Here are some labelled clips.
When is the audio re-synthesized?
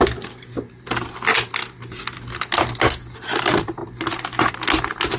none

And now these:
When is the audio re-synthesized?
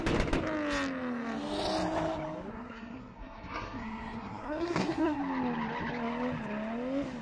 2.5-5.2 (codec, SNAC)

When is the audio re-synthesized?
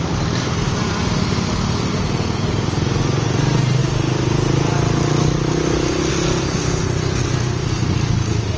none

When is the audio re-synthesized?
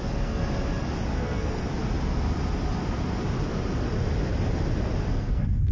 0.0-0.4 (codec, SNAC); 1.2-1.7; 5.1-5.7